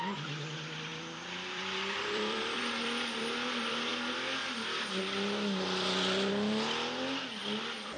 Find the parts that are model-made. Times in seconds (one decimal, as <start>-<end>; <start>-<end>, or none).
0.9-2.6